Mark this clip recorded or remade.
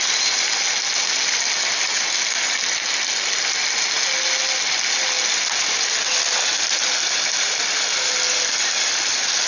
recorded